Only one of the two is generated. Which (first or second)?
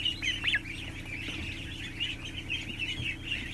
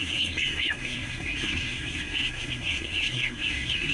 second